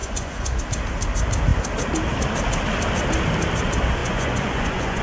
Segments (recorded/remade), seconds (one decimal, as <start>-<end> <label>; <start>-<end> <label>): 0.0-0.6 remade; 0.6-4.0 recorded; 4.0-5.0 remade